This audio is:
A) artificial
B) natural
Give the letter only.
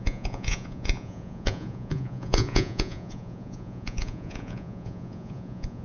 A